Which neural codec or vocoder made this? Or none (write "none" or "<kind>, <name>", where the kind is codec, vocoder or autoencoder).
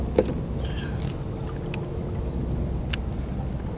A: none